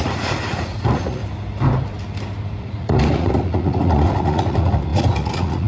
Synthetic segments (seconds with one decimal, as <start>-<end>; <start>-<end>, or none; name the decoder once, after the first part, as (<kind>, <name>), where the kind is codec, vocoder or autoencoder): 0.0-1.2 (vocoder, Vocos); 2.6-5.7